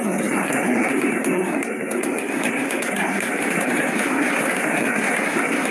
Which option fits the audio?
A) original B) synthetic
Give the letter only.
B